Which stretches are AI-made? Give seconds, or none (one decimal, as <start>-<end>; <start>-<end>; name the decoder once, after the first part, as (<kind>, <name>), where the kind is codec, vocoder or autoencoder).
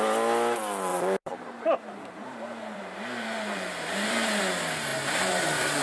0.9-4.4 (vocoder, BigVGAN v2); 4.9-5.8